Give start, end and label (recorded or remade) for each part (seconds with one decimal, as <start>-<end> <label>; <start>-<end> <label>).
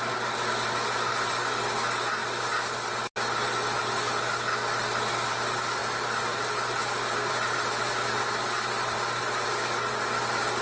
0.0-10.6 recorded